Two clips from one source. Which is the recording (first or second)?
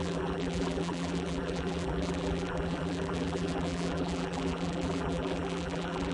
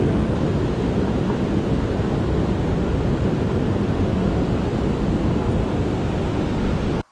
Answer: second